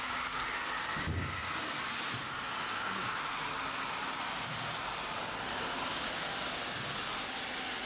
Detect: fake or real real